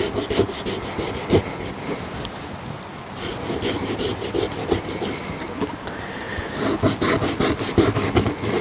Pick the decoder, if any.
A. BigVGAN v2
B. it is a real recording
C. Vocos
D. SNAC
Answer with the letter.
B